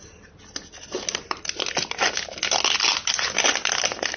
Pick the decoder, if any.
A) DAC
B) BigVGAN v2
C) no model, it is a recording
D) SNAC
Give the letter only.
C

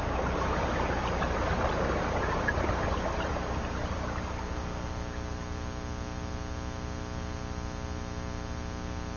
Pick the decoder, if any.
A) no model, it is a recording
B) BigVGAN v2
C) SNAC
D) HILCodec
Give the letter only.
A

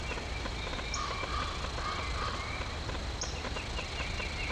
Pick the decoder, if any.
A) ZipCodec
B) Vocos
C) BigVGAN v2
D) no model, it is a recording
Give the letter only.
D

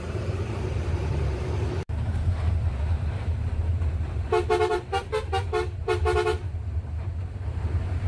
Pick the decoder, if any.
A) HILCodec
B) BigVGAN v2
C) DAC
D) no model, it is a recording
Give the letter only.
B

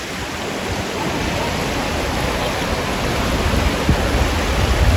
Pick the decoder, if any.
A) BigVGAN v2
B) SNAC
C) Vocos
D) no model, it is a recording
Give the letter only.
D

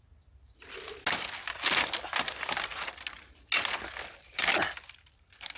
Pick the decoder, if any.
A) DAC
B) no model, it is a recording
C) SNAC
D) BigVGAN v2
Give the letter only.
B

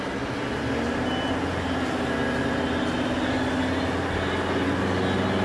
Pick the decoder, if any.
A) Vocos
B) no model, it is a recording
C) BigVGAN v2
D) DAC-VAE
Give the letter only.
B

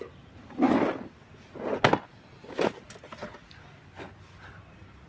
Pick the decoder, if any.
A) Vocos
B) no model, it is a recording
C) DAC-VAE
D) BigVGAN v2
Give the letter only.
B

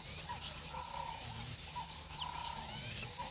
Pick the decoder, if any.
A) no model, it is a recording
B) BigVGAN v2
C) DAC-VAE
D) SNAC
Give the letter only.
B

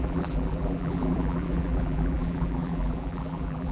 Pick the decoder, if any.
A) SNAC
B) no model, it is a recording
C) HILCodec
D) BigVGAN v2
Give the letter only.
D